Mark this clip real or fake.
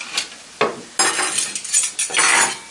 real